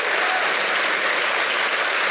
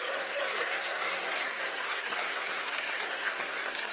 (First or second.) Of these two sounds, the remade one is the second